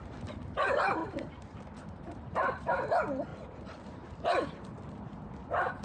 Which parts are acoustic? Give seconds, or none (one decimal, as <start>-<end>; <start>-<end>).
1.0-1.6